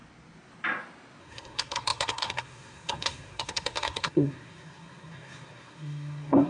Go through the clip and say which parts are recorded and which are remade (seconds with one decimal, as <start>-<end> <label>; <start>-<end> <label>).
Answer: 0.0-1.2 recorded; 1.2-6.5 remade